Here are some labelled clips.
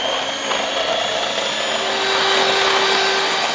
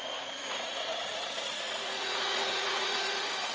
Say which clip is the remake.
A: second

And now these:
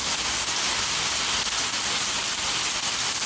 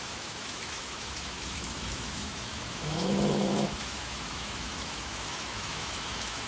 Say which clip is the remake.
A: second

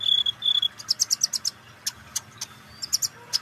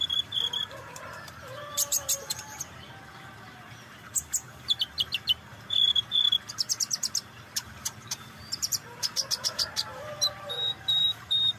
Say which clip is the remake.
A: second